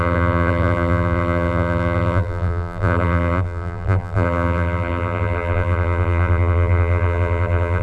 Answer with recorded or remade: remade